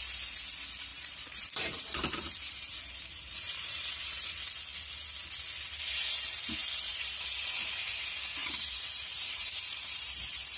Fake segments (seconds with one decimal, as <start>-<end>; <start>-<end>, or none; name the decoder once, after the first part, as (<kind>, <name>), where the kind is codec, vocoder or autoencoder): 0.9-4.3 (vocoder, BigVGAN v2); 6.9-7.9; 8.4-10.6